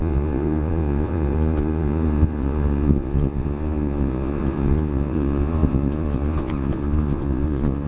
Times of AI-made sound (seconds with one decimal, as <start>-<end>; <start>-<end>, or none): 0.0-7.9